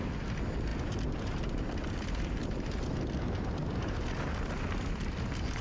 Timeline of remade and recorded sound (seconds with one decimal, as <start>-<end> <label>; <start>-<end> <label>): 0.0-5.6 recorded